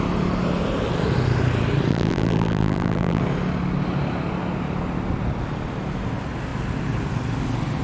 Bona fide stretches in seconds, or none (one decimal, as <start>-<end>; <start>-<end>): 0.0-1.9; 3.2-7.8